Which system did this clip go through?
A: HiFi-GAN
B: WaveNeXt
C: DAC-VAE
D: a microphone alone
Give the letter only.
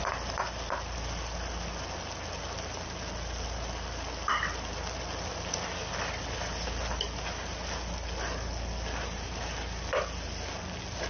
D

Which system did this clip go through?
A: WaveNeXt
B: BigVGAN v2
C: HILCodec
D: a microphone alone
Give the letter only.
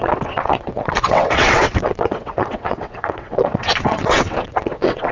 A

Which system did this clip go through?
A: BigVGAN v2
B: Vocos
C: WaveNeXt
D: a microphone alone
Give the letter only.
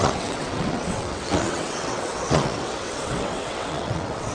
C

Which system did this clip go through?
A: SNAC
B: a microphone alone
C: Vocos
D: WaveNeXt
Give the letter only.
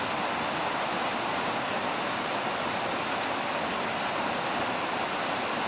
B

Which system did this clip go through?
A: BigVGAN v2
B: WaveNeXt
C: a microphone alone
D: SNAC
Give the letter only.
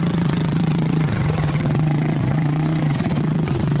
B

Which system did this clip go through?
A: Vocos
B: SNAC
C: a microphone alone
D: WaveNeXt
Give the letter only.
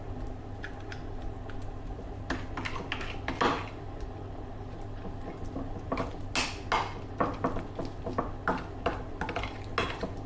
C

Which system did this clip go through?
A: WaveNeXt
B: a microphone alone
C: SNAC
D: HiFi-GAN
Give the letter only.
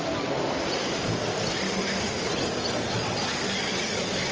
B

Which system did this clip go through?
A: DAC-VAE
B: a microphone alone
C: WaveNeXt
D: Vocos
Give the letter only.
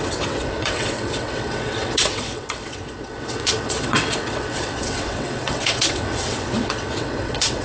C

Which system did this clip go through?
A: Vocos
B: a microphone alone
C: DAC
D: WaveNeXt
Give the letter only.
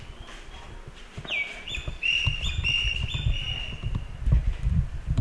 B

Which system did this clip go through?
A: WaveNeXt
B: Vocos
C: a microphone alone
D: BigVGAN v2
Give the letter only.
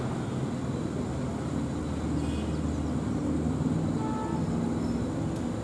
C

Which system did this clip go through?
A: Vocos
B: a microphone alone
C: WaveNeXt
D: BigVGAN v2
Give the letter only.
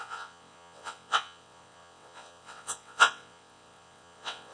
C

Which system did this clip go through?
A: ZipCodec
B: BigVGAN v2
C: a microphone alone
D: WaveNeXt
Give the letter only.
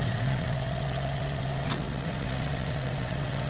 D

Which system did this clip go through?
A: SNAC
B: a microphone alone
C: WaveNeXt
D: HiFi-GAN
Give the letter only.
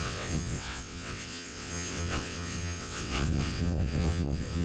C